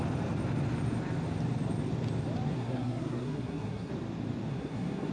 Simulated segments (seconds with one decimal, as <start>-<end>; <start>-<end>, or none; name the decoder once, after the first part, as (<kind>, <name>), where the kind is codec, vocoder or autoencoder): 2.5-3.9 (codec, SNAC); 4.5-5.1

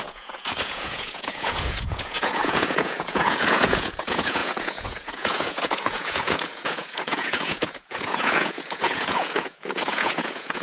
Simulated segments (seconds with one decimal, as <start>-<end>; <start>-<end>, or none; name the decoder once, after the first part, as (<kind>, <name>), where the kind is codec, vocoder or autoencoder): 0.0-10.6 (vocoder, Vocos)

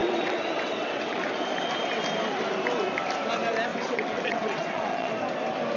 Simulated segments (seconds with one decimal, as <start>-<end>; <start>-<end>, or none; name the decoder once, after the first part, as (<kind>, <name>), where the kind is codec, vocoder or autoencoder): 0.0-1.2 (vocoder, WaveNeXt); 3.7-5.1

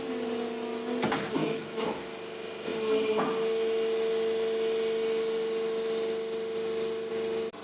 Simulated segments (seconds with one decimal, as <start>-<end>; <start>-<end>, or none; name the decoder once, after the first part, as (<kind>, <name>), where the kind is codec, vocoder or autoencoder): 1.4-2.0 (autoencoder, DAC-VAE)

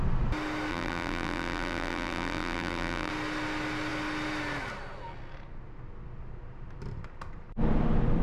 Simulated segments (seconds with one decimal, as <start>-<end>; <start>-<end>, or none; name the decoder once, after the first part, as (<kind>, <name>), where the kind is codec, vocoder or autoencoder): 0.7-3.1 (vocoder, BigVGAN v2)